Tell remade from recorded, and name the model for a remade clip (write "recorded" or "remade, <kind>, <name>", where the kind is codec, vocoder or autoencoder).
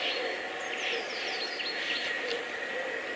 recorded